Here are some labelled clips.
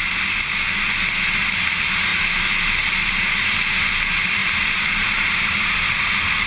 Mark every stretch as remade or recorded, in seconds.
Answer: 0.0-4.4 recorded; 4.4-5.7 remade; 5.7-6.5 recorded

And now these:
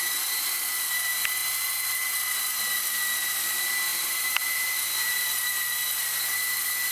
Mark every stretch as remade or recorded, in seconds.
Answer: 0.0-3.9 recorded; 3.9-6.9 remade

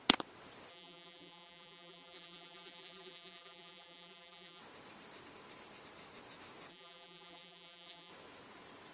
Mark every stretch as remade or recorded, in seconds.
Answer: 0.0-0.7 recorded; 0.7-4.6 remade; 4.6-6.7 recorded; 6.7-8.1 remade; 8.1-8.9 recorded

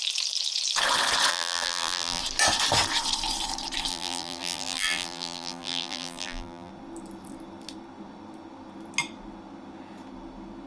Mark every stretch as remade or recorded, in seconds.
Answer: 0.0-1.3 recorded; 1.3-2.2 remade; 2.2-3.9 recorded; 3.9-6.7 remade; 6.7-10.7 recorded

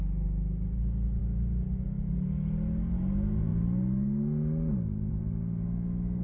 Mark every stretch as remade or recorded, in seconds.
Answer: 0.0-6.2 recorded

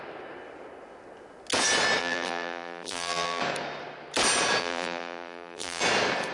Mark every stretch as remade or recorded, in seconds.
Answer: 0.0-2.0 recorded; 2.0-3.4 remade; 3.4-4.6 recorded; 4.6-5.8 remade; 5.8-6.3 recorded